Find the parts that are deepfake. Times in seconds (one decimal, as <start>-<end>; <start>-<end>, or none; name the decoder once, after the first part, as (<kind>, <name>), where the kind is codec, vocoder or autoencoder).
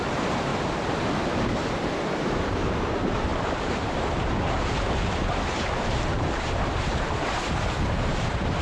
0.0-0.5 (vocoder, BigVGAN v2); 2.6-8.6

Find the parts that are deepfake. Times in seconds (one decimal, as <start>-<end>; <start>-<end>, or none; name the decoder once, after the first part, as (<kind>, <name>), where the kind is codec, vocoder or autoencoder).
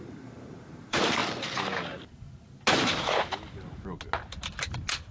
0.0-1.2 (vocoder, BigVGAN v2); 4.3-5.1